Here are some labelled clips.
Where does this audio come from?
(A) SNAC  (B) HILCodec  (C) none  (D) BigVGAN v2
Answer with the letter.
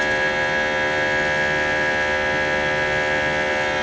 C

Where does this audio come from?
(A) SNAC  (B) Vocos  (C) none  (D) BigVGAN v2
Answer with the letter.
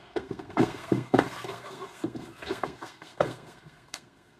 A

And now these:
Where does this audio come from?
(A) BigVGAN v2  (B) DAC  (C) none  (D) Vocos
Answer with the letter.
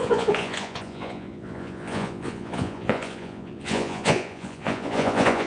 D